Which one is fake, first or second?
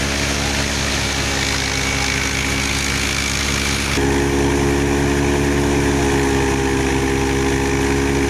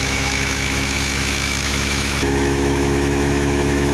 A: second